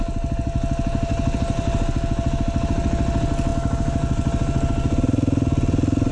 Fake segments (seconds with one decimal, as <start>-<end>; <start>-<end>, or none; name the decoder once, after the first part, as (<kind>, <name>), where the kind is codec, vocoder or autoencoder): none